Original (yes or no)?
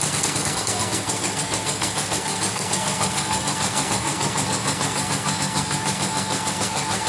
no